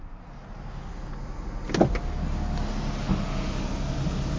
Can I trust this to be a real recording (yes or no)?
yes